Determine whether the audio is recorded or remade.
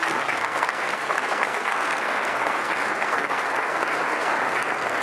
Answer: remade